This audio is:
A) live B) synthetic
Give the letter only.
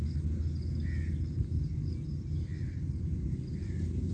A